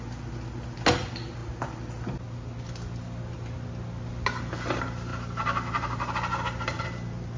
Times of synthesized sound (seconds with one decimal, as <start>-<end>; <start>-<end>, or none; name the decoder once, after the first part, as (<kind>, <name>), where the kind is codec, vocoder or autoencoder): none